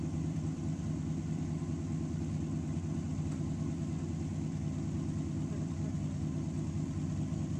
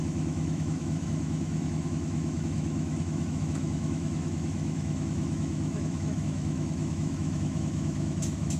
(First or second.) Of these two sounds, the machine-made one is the second